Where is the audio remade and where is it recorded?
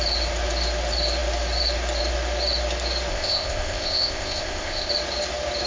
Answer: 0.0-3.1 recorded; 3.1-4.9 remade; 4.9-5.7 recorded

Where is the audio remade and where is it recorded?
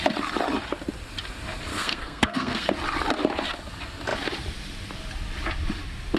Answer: 0.0-1.7 recorded; 1.7-2.7 remade; 2.7-6.2 recorded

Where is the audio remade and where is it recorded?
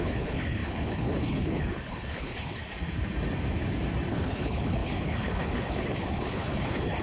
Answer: 0.0-2.6 remade; 2.6-4.1 recorded; 4.1-7.0 remade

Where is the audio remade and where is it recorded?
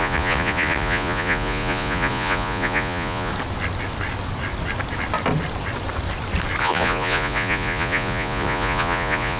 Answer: 0.0-3.3 remade; 3.3-6.6 recorded; 6.6-9.4 remade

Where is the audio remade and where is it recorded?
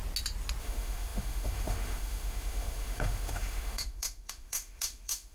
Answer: 0.0-0.6 recorded; 0.6-5.3 remade